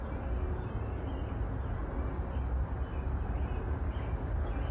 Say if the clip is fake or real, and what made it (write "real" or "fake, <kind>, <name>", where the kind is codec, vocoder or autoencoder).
real